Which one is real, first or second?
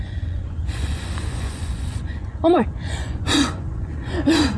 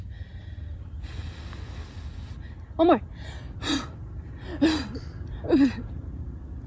second